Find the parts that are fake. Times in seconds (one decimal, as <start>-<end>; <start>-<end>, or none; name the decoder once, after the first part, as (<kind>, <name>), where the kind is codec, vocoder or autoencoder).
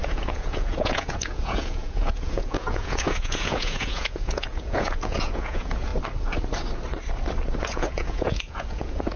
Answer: 0.0-5.9 (vocoder, Vocos); 7.6-9.2